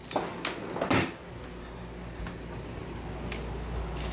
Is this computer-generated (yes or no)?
no